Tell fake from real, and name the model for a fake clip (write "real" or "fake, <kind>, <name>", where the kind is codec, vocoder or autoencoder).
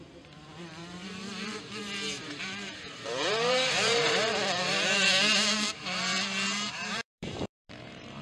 fake, vocoder, BigVGAN v2